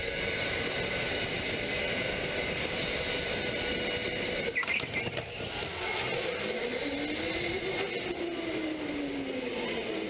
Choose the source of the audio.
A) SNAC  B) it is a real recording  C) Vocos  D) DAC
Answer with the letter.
B